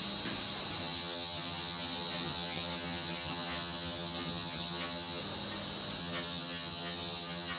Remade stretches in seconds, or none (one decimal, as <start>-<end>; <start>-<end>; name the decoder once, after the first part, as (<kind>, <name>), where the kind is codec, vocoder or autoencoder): 0.8-5.2 (vocoder, HiFi-GAN); 6.0-7.6